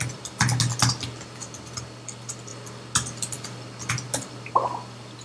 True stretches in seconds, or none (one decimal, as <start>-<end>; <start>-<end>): 0.0-5.2